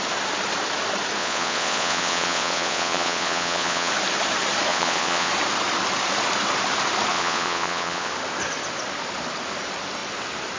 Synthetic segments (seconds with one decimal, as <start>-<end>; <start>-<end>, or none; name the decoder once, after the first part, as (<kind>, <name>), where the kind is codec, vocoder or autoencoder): 1.2-3.9 (vocoder, Vocos); 4.7-5.3; 7.1-8.1